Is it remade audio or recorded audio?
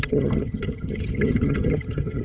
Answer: remade